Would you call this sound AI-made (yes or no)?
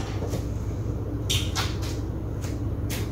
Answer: no